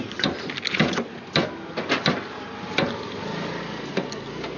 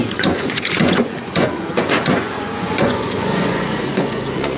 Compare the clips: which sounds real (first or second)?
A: first